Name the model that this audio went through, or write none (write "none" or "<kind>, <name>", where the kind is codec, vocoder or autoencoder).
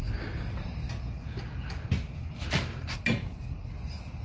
none